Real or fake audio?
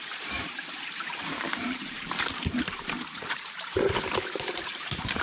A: fake